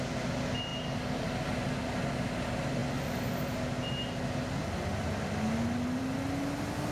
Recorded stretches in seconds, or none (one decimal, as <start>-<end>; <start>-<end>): 0.0-6.9